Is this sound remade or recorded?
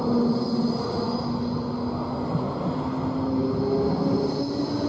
recorded